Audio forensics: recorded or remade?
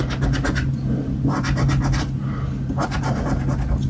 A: recorded